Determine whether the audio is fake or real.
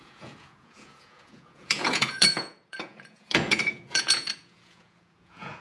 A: fake